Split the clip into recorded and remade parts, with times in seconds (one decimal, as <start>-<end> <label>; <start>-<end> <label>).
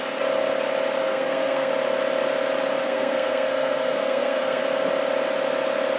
0.0-1.0 recorded; 1.0-1.7 remade; 1.7-2.8 recorded; 2.8-4.6 remade; 4.6-6.0 recorded